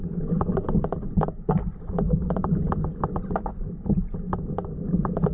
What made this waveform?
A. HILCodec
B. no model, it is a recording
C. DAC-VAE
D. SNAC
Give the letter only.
B